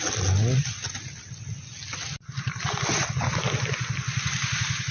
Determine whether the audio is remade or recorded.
recorded